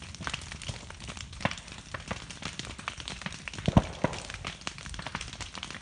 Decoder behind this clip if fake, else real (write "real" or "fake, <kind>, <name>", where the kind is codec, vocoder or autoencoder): real